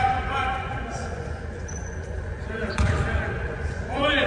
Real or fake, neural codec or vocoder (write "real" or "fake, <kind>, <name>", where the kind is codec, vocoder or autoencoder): fake, vocoder, Vocos